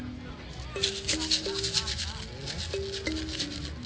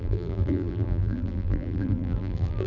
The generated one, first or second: second